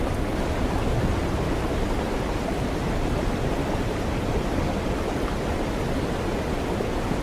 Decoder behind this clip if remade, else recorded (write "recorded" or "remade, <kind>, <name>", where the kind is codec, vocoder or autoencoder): recorded